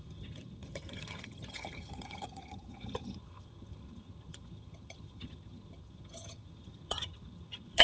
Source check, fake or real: fake